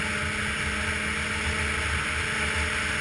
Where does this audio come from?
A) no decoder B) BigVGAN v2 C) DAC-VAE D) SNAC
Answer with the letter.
A